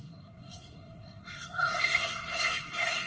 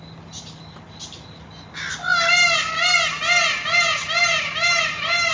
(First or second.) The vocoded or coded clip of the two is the first